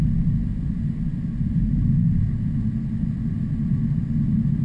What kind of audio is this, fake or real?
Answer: real